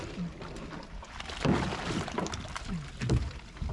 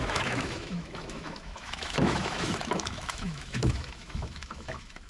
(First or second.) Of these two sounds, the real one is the first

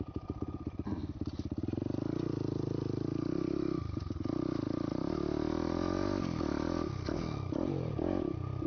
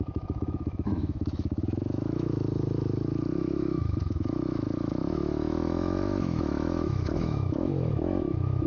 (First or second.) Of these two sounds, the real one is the first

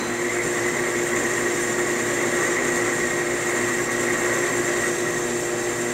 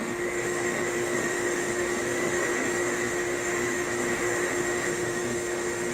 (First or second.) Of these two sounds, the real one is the first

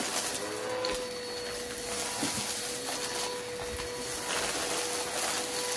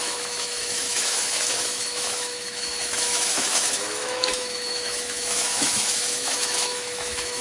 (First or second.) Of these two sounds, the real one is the first